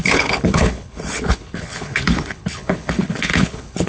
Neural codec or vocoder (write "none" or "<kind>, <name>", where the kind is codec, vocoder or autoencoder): codec, HILCodec